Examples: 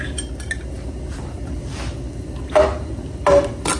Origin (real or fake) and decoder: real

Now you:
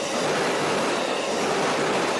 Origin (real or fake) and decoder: real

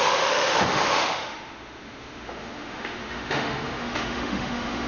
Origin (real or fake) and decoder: fake, autoencoder, DAC-VAE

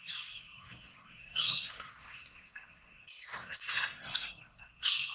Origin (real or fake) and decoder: fake, codec, SNAC